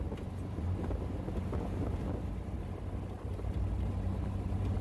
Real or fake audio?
real